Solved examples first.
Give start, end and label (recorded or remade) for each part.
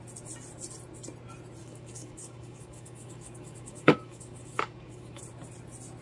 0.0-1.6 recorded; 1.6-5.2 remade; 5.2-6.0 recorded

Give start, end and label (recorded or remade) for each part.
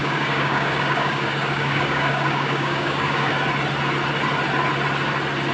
0.0-3.3 remade; 3.3-5.5 recorded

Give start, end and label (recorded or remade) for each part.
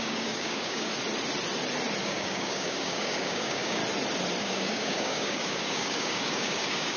0.0-0.9 remade; 0.9-2.0 recorded; 2.0-3.8 remade; 3.8-4.4 recorded; 4.4-7.0 remade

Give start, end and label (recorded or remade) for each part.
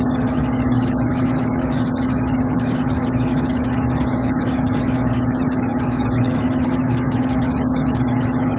0.0-8.6 remade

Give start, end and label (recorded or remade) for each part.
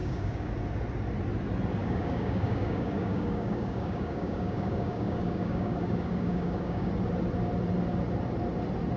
0.0-0.5 remade; 0.5-1.8 recorded; 1.8-6.9 remade; 6.9-9.0 recorded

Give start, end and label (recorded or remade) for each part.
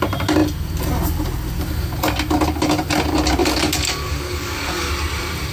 0.0-3.4 recorded; 3.4-4.9 remade; 4.9-5.5 recorded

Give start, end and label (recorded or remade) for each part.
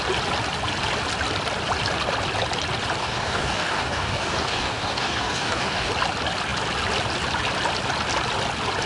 0.0-3.0 recorded; 3.0-5.9 remade; 5.9-8.9 recorded